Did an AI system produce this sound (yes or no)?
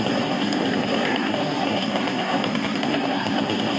yes